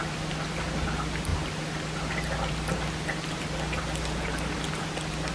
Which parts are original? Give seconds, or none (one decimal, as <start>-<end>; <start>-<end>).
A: 0.0-5.3